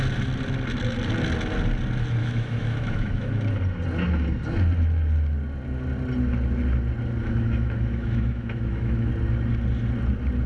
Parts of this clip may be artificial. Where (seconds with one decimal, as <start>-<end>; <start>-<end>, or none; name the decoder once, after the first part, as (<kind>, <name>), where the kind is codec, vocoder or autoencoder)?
2.2-3.3 (autoencoder, DAC-VAE); 7.2-9.1